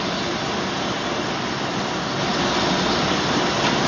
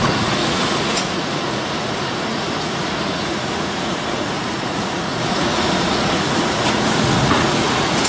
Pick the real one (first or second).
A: first